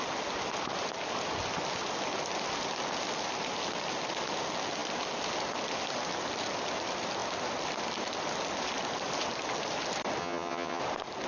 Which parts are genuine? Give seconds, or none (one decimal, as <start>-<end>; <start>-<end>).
0.0-10.2; 10.8-11.3